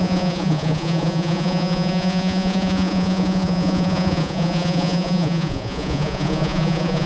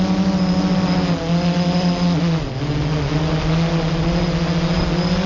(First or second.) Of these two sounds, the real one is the second